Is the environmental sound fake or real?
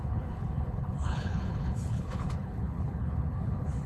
fake